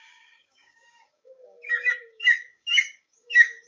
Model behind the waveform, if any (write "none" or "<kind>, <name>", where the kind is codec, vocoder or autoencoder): codec, DAC